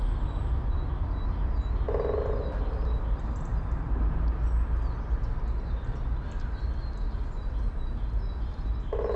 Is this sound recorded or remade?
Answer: recorded